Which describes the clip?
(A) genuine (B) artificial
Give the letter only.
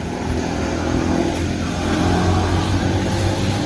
A